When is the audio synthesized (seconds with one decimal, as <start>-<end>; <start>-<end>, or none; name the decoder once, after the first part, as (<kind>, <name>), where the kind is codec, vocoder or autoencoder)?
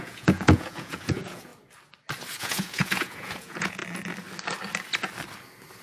0.0-1.5 (vocoder, Vocos); 2.4-3.8